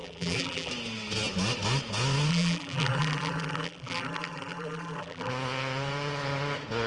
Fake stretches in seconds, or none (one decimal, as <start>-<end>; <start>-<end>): 0.0-0.7; 2.3-5.3